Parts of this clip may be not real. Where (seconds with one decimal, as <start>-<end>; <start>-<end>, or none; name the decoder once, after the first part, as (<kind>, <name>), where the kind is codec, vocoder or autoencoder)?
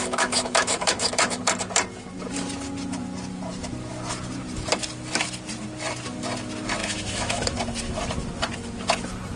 0.0-1.4 (autoencoder, DAC-VAE); 6.8-7.6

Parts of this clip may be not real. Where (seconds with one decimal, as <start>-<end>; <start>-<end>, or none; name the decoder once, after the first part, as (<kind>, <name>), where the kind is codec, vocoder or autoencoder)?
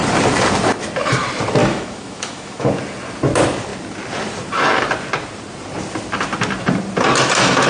1.6-2.7 (autoencoder, DAC-VAE)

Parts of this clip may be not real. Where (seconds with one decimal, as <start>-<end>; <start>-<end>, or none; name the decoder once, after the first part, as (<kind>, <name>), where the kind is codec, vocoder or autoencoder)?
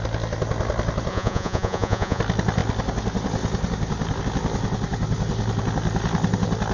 1.1-2.2 (vocoder, Vocos)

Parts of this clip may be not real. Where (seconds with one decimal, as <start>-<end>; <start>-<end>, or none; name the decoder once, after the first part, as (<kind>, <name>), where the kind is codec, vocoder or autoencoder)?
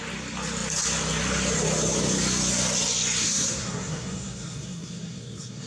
3.2-5.7 (codec, SNAC)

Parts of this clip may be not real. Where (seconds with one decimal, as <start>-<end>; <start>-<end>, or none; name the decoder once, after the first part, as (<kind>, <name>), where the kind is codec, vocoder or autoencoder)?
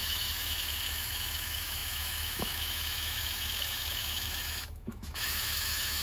0.0-6.0 (autoencoder, DAC-VAE)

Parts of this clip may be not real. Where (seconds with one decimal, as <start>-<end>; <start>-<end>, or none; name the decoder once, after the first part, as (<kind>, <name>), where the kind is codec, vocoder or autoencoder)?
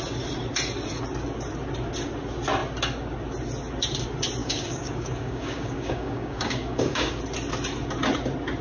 4.4-7.2 (codec, DAC)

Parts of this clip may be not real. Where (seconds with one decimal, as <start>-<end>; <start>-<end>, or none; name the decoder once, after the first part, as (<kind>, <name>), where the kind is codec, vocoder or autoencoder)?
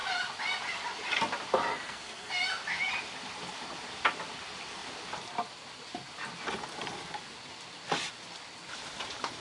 1.7-2.3 (codec, SNAC)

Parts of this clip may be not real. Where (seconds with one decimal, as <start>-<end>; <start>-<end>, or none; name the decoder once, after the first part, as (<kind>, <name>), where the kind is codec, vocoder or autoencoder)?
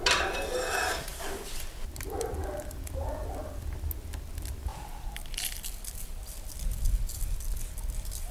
none